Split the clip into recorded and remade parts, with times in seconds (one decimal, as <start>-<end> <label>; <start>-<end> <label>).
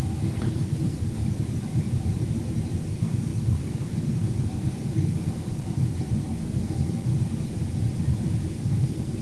0.0-1.2 remade; 1.2-2.9 recorded; 2.9-7.1 remade; 7.1-8.5 recorded; 8.5-9.2 remade